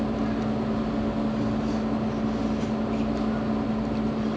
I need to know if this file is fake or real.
real